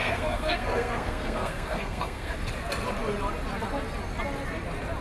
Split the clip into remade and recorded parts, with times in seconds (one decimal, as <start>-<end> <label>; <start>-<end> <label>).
0.0-2.3 remade; 2.3-5.0 recorded